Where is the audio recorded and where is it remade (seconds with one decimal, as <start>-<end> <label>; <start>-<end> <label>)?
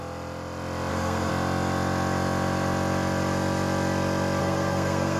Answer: 0.0-0.9 recorded; 0.9-1.3 remade; 1.3-4.4 recorded; 4.4-5.2 remade